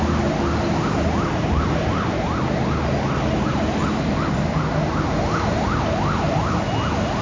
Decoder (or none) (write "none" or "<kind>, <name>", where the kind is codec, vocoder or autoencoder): none